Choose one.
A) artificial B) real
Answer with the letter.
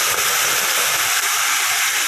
B